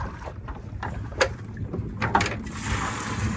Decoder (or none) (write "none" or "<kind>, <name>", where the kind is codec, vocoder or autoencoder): none